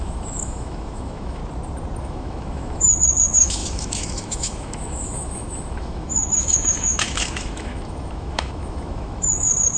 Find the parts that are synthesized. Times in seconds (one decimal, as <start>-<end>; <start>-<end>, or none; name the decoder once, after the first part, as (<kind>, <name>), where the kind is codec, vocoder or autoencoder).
0.0-1.4 (autoencoder, DAC-VAE); 2.0-9.8